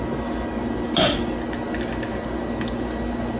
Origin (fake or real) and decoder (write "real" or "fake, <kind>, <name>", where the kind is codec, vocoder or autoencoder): real